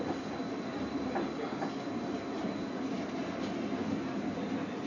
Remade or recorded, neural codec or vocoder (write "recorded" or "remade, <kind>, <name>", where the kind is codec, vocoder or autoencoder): recorded